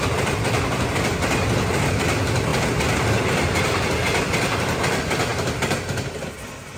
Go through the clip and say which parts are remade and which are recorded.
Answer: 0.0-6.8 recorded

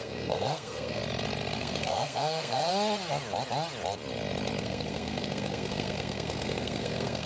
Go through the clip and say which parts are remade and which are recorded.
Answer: 0.0-1.0 remade; 1.0-1.6 recorded; 1.6-2.7 remade; 2.7-4.6 recorded; 4.6-7.3 remade

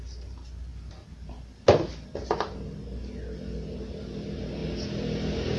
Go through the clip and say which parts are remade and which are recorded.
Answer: 0.0-5.6 recorded

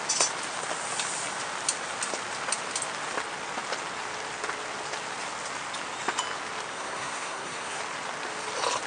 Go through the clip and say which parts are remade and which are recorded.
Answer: 0.0-6.7 recorded; 6.7-7.8 remade; 7.8-8.9 recorded

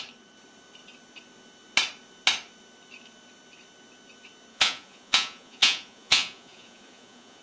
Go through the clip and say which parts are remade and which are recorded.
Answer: 0.0-4.5 recorded; 4.5-7.4 remade

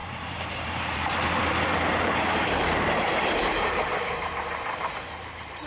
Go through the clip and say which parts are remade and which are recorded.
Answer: 0.0-5.7 remade

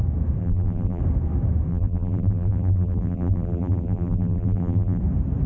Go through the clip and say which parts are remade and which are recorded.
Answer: 0.0-0.4 recorded; 0.4-1.0 remade; 1.0-1.7 recorded; 1.7-5.0 remade; 5.0-5.5 recorded